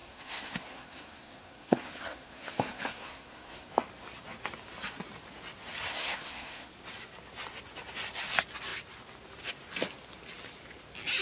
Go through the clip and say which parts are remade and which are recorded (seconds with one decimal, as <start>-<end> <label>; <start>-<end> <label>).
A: 0.0-3.7 remade; 3.7-5.9 recorded; 5.9-6.7 remade; 6.7-11.2 recorded